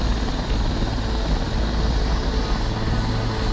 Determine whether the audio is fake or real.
real